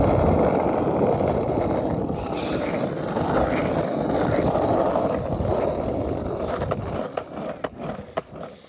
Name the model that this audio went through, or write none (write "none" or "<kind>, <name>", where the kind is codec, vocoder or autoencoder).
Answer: none